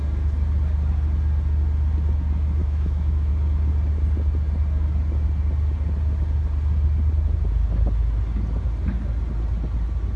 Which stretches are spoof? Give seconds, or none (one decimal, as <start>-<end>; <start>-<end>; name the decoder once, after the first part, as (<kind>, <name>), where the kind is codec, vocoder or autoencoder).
2.6-3.3 (autoencoder, DAC-VAE)

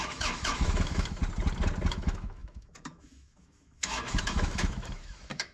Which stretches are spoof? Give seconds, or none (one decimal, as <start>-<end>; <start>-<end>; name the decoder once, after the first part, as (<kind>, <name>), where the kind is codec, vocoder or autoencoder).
0.0-1.2 (autoencoder, DAC-VAE); 1.9-5.5